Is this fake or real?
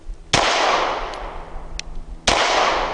real